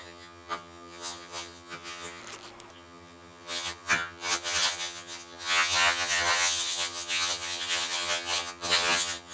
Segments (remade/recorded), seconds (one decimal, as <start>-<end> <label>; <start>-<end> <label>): 0.0-2.2 remade; 2.2-2.7 recorded; 2.7-9.3 remade